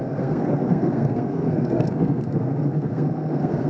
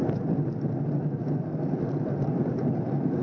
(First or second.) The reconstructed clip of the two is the first